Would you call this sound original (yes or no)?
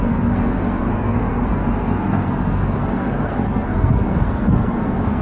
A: no